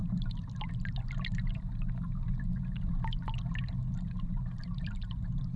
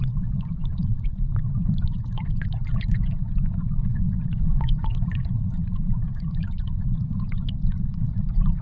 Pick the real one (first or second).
first